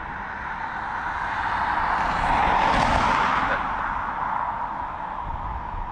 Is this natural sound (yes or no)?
yes